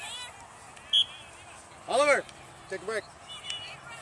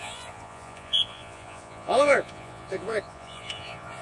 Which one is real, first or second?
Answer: first